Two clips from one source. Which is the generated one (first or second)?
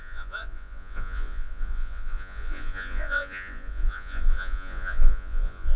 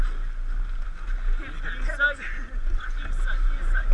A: first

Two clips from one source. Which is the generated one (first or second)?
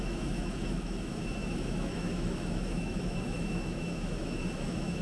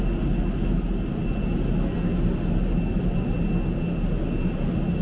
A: first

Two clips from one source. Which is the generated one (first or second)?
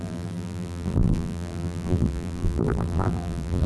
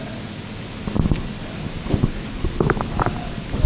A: first